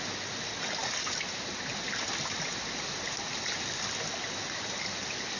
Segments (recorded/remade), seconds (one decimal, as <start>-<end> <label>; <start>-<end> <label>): 0.0-5.4 recorded